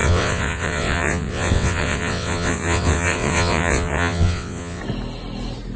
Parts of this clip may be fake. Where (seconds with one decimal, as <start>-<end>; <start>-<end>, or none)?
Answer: 0.0-4.8